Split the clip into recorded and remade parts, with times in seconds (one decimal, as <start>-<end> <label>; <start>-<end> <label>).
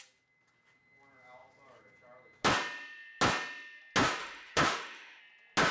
0.0-4.2 recorded; 4.2-5.2 remade; 5.2-5.7 recorded